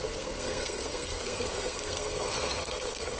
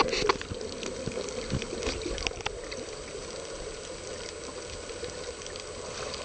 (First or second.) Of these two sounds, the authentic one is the second